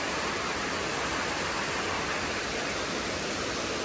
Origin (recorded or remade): recorded